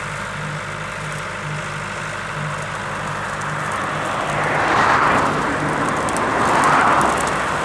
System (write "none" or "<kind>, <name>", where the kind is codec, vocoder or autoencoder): none